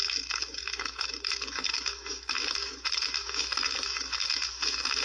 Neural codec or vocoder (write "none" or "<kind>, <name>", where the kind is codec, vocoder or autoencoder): autoencoder, DAC-VAE